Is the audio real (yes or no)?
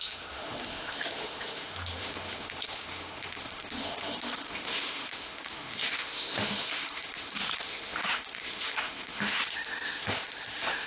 no